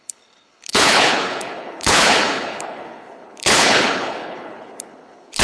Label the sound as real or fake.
fake